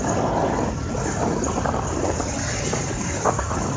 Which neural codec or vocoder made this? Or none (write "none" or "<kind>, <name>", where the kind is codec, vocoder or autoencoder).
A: none